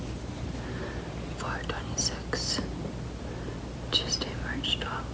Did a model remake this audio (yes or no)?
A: no